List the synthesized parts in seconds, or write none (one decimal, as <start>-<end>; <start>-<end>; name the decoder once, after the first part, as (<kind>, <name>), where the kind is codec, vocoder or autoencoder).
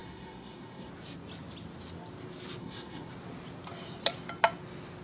0.0-0.9 (codec, SNAC); 2.6-3.1